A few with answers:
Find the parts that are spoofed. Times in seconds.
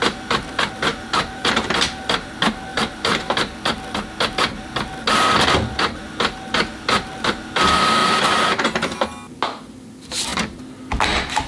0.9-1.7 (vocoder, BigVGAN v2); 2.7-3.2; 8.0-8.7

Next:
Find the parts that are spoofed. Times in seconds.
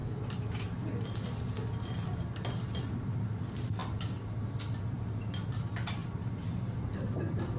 3.8-5.0 (vocoder, BigVGAN v2); 6.0-6.6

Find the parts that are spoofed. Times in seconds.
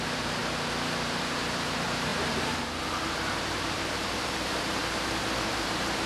0.0-0.4 (vocoder, BigVGAN v2); 1.2-2.1; 3.4-4.8; 5.4-6.1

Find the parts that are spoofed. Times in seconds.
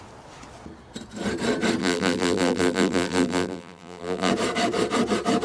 1.8-4.3 (vocoder, BigVGAN v2)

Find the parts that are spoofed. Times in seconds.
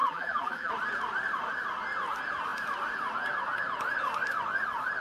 0.0-0.7 (vocoder, BigVGAN v2)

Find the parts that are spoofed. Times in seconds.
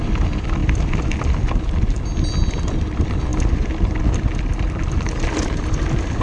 none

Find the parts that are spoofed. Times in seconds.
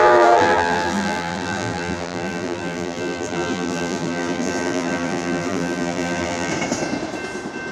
0.0-6.5 (vocoder, BigVGAN v2)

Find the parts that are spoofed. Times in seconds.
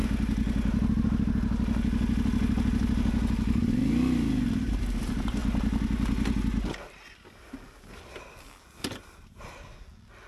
none